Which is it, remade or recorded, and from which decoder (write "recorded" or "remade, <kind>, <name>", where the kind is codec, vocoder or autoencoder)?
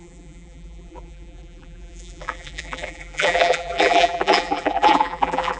remade, vocoder, BigVGAN v2